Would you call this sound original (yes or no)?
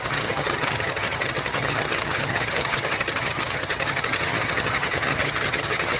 no